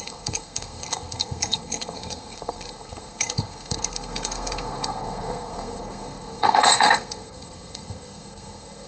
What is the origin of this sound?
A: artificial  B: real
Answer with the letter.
A